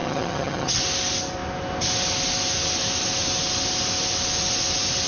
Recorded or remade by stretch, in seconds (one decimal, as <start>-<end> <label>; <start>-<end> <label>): 0.0-0.8 remade; 0.8-5.1 recorded

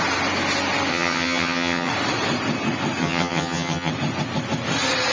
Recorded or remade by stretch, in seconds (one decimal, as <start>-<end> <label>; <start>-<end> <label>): 0.0-0.9 recorded; 0.9-1.9 remade; 1.9-3.0 recorded; 3.0-3.9 remade; 3.9-5.1 recorded

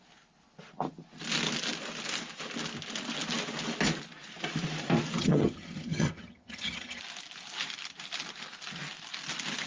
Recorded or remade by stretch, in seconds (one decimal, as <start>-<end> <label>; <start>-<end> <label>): 0.0-5.2 recorded; 5.2-7.0 remade; 7.0-9.7 recorded

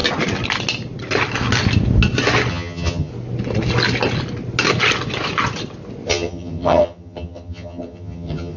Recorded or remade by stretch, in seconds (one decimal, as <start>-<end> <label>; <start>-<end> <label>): 0.0-2.5 recorded; 2.5-3.1 remade; 3.1-6.1 recorded; 6.1-8.6 remade

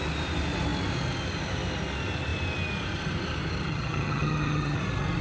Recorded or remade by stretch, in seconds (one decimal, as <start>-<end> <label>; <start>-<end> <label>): 0.0-3.7 recorded; 3.7-4.8 remade; 4.8-5.2 recorded

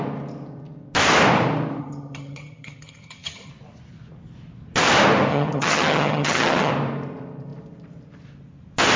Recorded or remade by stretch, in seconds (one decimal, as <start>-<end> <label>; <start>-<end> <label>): 0.0-1.8 recorded; 1.8-3.5 remade; 3.5-5.3 recorded; 5.3-6.7 remade; 6.7-9.0 recorded

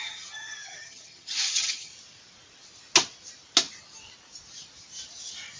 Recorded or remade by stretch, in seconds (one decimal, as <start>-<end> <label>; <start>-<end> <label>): 0.0-1.9 remade; 1.9-5.6 recorded

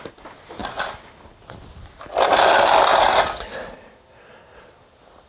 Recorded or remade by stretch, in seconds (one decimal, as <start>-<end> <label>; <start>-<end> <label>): 0.0-5.3 recorded